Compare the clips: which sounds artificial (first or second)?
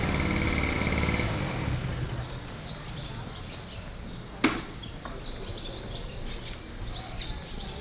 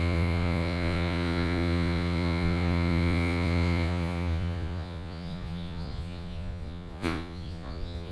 second